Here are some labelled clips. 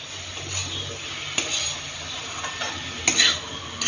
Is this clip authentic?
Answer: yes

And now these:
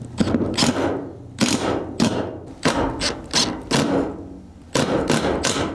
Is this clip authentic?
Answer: yes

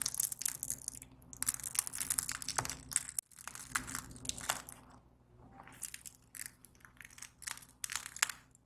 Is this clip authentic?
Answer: yes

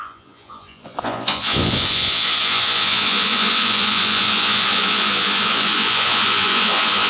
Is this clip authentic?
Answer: no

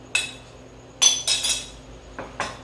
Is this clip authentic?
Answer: yes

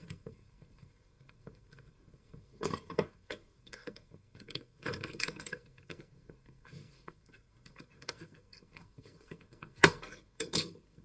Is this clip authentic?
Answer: no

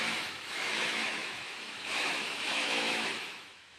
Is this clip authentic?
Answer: no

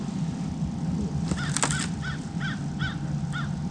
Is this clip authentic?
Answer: yes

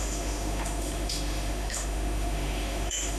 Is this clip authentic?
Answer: no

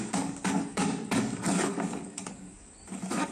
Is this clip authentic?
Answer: no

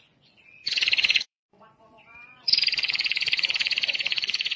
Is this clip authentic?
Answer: no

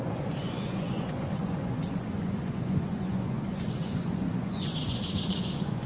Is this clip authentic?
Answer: no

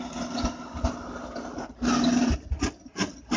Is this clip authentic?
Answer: yes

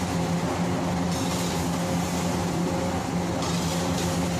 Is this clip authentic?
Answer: yes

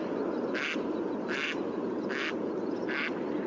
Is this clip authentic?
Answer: yes